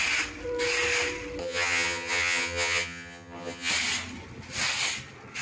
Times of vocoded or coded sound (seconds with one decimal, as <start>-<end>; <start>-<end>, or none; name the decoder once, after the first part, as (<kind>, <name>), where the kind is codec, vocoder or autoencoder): 1.4-3.7 (vocoder, HiFi-GAN)